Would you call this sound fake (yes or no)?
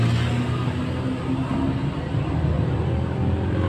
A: no